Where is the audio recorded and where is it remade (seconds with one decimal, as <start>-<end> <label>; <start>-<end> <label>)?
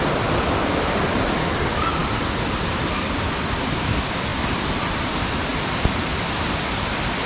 0.0-2.0 remade; 2.0-2.7 recorded; 2.7-5.5 remade; 5.5-6.4 recorded; 6.4-7.3 remade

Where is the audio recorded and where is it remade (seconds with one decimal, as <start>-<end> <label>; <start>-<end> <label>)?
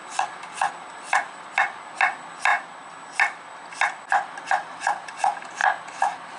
0.0-0.7 remade; 0.7-6.4 recorded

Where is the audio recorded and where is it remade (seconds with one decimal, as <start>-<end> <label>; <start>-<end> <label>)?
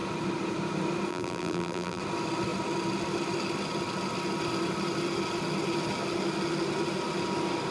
0.0-1.1 recorded; 1.1-2.0 remade; 2.0-7.7 recorded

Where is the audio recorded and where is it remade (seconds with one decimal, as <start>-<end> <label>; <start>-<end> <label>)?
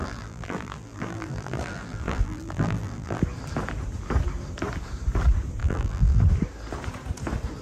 0.0-3.2 remade; 3.2-5.6 recorded; 5.6-6.2 remade; 6.2-7.6 recorded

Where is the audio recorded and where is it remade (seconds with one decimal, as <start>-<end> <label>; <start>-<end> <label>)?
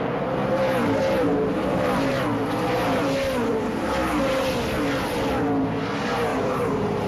0.0-0.4 recorded; 0.4-2.2 remade; 2.2-3.5 recorded; 3.5-4.4 remade; 4.4-6.3 recorded; 6.3-7.1 remade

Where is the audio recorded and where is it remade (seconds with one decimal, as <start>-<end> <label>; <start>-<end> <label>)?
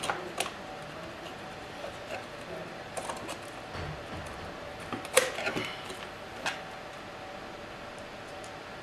0.0-1.3 recorded; 1.3-1.9 remade; 1.9-8.8 recorded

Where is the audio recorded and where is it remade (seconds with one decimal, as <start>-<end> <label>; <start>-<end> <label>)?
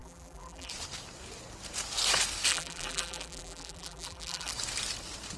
0.0-0.7 remade; 0.7-2.5 recorded; 2.5-4.5 remade; 4.5-5.4 recorded